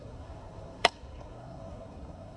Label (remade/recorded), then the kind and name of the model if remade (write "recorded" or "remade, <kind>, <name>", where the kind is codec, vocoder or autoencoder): remade, codec, SNAC